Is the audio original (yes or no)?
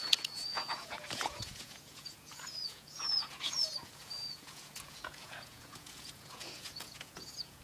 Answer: no